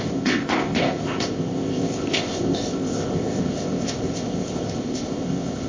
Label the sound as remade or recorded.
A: remade